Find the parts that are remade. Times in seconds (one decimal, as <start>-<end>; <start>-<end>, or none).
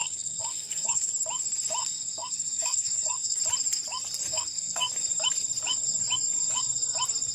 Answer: 0.0-1.1; 1.8-3.4; 4.3-4.9